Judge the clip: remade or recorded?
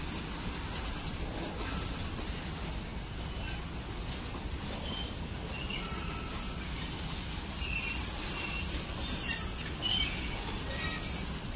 recorded